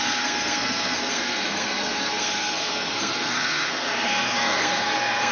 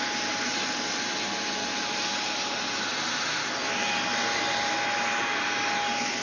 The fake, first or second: first